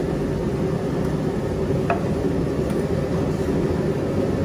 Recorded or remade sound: recorded